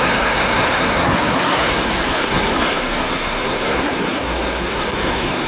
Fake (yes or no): yes